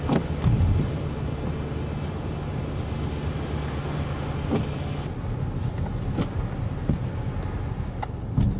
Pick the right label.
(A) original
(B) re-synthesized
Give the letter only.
A